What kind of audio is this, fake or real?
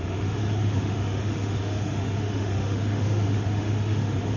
fake